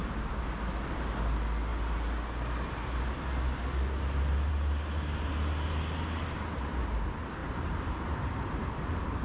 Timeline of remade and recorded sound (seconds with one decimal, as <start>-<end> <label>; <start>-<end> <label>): 0.0-7.4 recorded; 7.4-9.2 remade